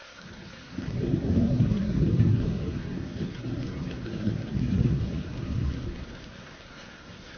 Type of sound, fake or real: fake